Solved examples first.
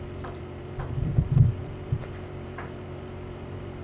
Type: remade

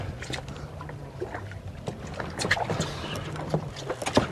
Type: recorded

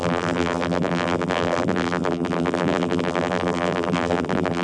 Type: remade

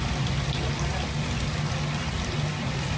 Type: recorded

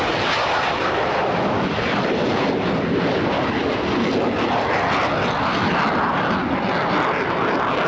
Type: recorded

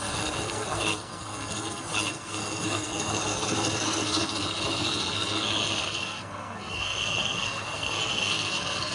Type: remade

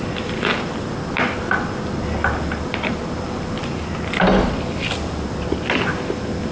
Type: recorded